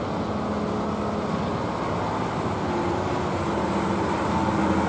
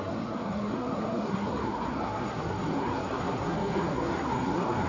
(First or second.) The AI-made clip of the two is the second